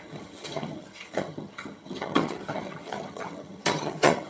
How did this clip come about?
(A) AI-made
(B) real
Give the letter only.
A